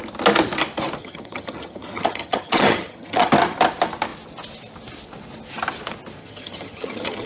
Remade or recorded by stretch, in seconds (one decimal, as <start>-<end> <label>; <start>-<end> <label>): 0.0-1.0 recorded; 1.0-3.3 remade; 3.3-6.2 recorded; 6.2-7.3 remade

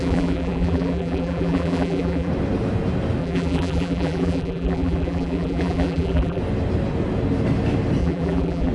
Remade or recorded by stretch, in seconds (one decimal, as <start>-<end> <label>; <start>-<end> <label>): 0.0-2.3 remade; 2.3-3.2 recorded; 3.2-6.4 remade; 6.4-8.0 recorded; 8.0-8.7 remade

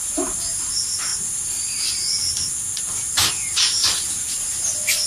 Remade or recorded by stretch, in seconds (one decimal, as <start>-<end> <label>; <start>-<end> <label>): 0.0-5.1 recorded